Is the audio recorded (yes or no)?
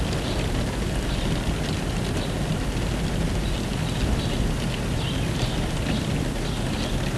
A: yes